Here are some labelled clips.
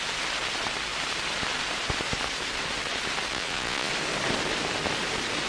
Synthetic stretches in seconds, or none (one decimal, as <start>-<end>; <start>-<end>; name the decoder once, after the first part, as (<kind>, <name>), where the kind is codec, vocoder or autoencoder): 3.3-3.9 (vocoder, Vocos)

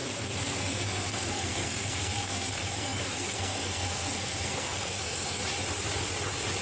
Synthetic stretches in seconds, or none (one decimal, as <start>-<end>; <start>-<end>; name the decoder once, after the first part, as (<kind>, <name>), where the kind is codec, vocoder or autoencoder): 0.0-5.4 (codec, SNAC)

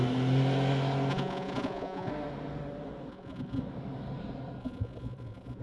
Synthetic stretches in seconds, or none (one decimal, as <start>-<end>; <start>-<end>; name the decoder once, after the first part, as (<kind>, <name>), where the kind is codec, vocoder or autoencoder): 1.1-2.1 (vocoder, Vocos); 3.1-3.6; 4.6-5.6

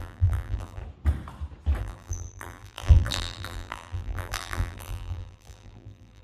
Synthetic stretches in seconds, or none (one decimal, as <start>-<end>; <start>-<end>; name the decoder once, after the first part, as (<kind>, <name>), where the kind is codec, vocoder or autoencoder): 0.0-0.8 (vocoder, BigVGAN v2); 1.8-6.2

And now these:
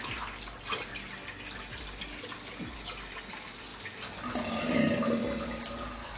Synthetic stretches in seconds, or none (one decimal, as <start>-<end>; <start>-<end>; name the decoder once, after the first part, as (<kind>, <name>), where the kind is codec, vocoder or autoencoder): none